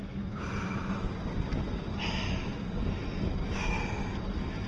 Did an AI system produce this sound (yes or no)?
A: no